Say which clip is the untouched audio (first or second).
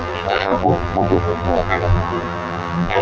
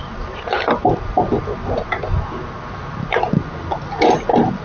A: second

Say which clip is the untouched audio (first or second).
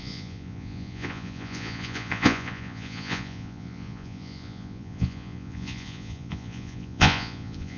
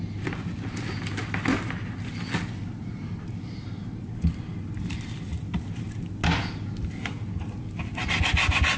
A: second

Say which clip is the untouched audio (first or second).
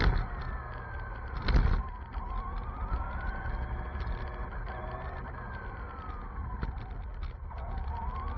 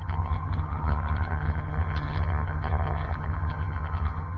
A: first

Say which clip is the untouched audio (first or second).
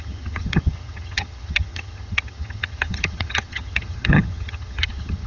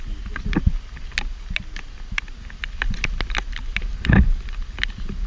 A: second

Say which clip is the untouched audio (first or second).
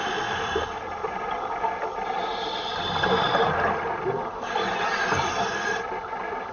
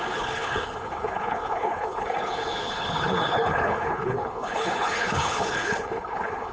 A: first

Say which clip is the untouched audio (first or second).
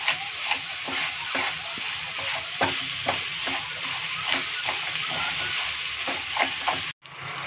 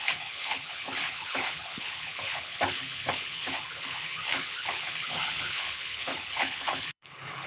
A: first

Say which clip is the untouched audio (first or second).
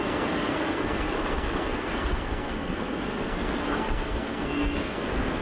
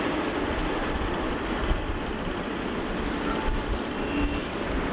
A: second